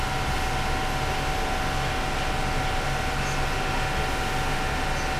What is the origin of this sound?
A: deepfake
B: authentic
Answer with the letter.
B